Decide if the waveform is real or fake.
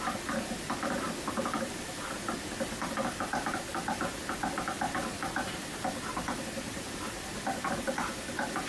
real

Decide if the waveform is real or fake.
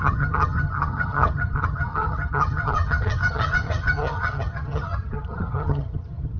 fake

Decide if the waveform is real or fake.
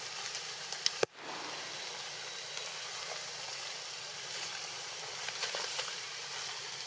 real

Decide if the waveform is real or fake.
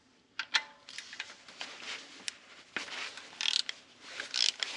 real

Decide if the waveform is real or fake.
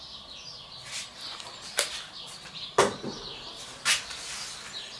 real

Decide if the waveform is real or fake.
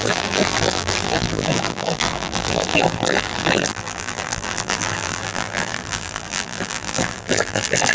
fake